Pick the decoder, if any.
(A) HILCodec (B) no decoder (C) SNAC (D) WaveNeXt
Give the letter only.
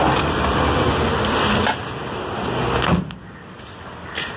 B